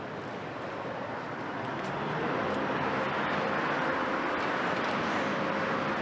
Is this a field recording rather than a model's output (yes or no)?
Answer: yes